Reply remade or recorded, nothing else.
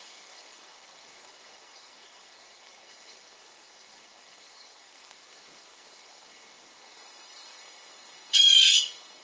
remade